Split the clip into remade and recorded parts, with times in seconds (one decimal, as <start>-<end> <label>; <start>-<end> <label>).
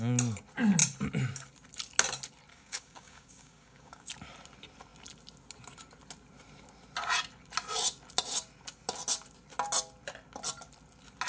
0.0-2.5 recorded; 2.5-4.1 remade; 4.1-11.3 recorded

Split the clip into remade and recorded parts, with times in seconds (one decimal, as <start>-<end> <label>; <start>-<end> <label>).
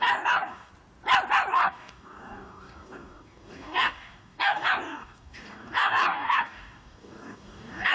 0.0-0.7 remade; 0.7-1.5 recorded; 1.5-7.9 remade